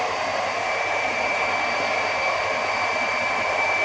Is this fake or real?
fake